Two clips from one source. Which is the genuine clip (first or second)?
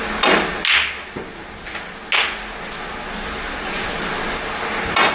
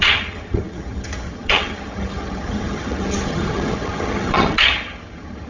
first